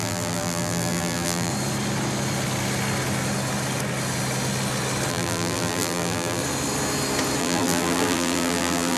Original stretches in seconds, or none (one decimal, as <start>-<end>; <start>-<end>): 1.5-5.1; 6.4-7.4

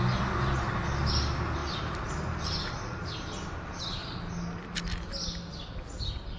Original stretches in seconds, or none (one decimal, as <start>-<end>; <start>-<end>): 0.0-1.6; 3.8-6.4

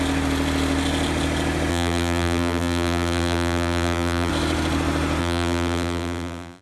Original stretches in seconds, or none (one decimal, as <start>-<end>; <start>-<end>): 0.0-1.7; 4.3-5.2